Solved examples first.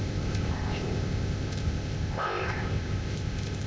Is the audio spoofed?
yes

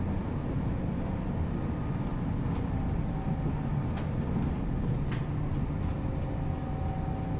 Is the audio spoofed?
no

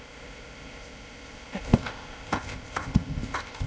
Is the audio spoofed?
yes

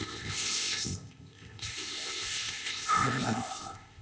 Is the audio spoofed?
yes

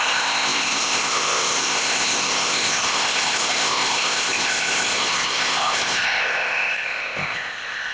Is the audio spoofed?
yes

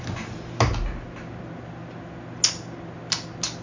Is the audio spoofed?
no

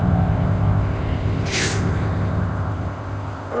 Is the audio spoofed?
yes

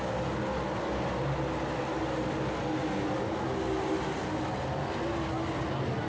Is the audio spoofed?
no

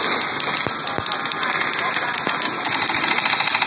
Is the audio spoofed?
no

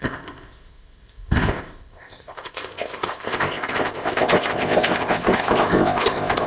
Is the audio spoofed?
yes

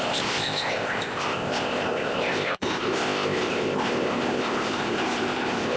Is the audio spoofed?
yes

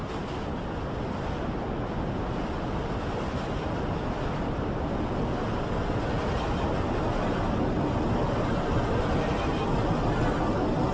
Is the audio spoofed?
no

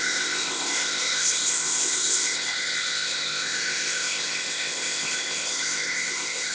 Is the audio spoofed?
yes